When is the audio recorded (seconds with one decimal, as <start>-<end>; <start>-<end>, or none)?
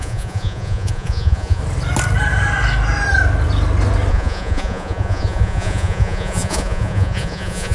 1.6-4.1